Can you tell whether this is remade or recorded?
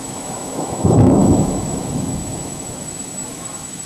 remade